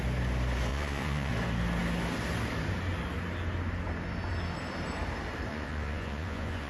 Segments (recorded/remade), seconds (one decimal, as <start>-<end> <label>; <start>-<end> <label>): 0.0-0.7 recorded; 0.7-1.3 remade; 1.3-5.5 recorded; 5.5-6.7 remade